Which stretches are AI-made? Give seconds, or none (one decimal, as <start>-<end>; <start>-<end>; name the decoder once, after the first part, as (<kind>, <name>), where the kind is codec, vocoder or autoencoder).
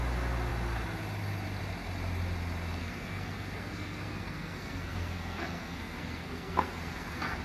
2.8-7.4 (codec, SNAC)